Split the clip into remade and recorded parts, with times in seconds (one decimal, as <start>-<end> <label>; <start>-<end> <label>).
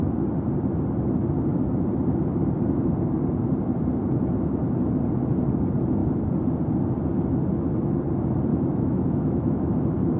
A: 0.0-8.5 recorded; 8.5-9.7 remade; 9.7-10.2 recorded